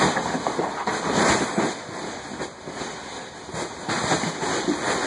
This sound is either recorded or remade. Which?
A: recorded